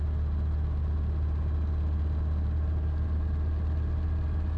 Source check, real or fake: real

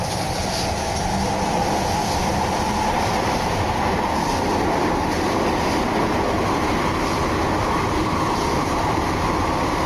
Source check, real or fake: real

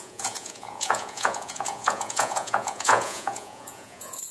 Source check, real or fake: fake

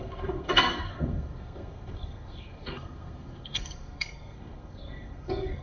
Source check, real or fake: fake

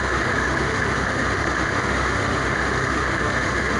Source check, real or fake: fake